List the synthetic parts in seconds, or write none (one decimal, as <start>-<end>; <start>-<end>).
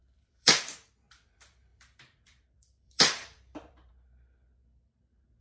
0.0-0.9; 1.7-3.9